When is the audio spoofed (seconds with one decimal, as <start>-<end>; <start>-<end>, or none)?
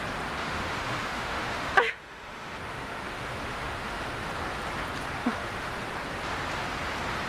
0.4-4.3; 5.2-5.7